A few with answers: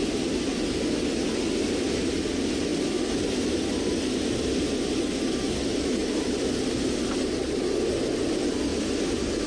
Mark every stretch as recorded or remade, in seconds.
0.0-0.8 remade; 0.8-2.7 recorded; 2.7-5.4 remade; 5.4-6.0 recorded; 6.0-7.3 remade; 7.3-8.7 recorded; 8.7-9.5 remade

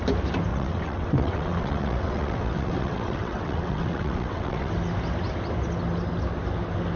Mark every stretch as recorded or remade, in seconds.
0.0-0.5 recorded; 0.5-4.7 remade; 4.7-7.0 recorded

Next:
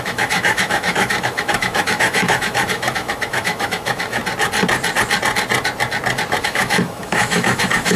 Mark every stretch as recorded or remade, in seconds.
0.0-4.2 remade; 4.2-6.4 recorded; 6.4-8.0 remade

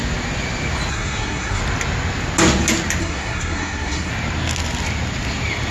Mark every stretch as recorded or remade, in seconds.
0.0-0.9 recorded; 0.9-1.6 remade; 1.6-3.0 recorded; 3.0-4.1 remade; 4.1-5.7 recorded

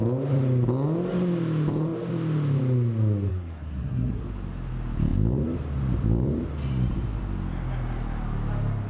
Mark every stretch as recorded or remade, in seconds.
0.0-3.3 recorded; 3.3-4.2 remade; 4.2-8.9 recorded